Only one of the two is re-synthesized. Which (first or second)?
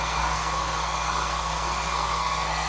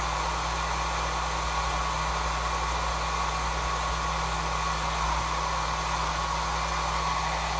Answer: first